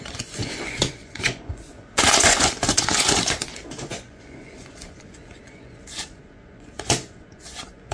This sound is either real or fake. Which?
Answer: fake